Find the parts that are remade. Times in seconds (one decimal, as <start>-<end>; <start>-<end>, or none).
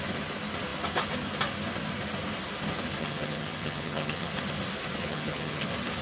3.0-4.3; 5.0-5.6